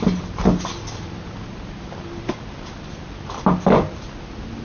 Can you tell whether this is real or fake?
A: real